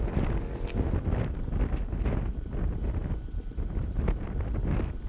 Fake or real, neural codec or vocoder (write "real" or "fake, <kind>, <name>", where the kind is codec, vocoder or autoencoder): real